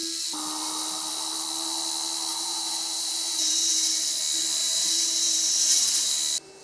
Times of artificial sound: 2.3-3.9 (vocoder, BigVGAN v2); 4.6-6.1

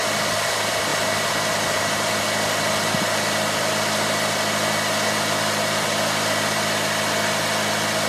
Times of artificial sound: none

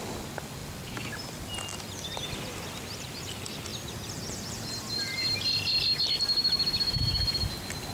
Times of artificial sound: none

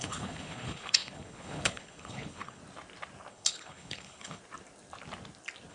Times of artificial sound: 0.0-2.6 (codec, HILCodec); 3.3-4.4

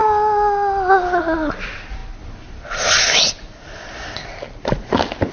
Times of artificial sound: none

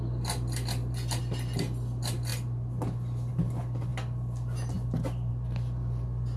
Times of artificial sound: none

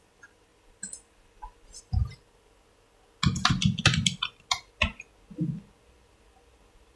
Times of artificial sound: none

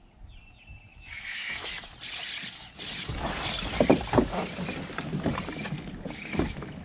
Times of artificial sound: 0.9-1.7 (autoencoder, DAC-VAE)